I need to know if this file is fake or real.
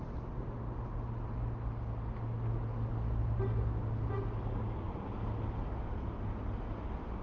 real